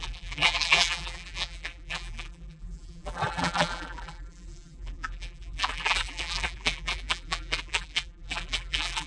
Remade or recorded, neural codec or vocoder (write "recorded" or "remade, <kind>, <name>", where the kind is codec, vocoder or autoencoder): remade, vocoder, BigVGAN v2